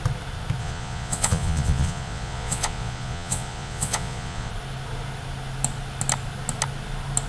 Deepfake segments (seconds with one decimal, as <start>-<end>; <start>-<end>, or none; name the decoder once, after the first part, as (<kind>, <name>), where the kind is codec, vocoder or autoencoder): 0.6-4.5 (vocoder, Vocos)